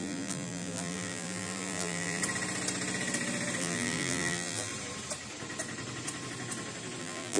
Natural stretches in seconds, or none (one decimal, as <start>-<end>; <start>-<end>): 2.2-3.6; 4.7-7.0